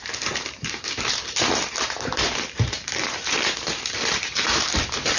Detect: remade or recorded remade